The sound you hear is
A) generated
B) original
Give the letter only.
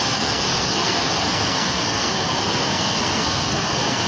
A